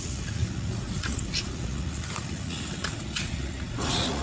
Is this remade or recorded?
remade